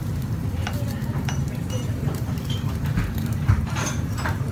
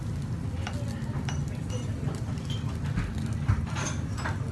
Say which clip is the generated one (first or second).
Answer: first